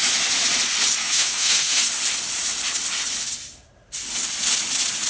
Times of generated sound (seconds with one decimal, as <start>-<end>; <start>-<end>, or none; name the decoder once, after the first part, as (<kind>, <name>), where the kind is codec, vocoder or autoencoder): 1.0-1.8 (autoencoder, DAC-VAE)